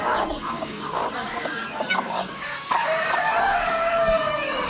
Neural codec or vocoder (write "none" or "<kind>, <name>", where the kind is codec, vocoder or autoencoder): codec, DAC